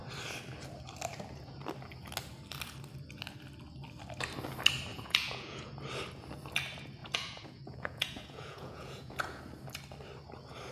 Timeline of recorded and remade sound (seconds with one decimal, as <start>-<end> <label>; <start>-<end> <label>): 0.0-4.9 recorded; 4.9-5.7 remade; 5.7-7.0 recorded; 7.0-9.4 remade; 9.4-10.7 recorded